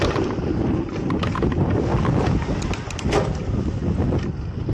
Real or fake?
real